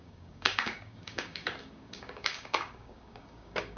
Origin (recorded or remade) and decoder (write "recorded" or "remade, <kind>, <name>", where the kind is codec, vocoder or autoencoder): remade, codec, DAC